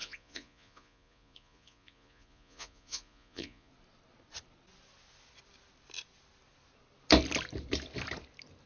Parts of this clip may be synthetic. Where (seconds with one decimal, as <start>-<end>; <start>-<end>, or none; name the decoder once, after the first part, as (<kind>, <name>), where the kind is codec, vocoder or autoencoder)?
0.0-3.7 (vocoder, Vocos)